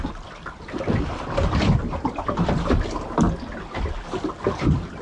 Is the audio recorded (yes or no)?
yes